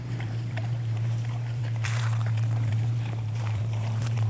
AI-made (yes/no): yes